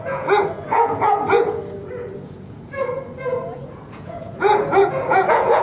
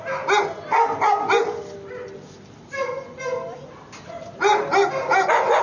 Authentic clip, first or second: second